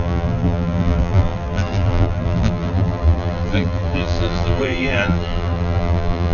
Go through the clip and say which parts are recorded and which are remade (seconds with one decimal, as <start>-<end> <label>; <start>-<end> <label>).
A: 0.0-6.3 remade